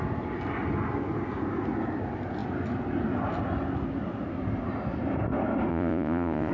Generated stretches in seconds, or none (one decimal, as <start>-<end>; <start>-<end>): 5.7-6.5